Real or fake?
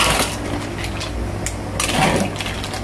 real